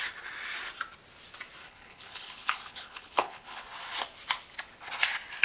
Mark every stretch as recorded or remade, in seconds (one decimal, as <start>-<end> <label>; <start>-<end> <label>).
0.0-1.6 recorded; 1.6-3.6 remade; 3.6-5.4 recorded